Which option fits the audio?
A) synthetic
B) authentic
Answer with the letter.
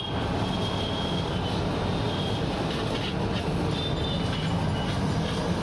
B